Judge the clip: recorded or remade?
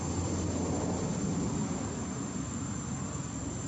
recorded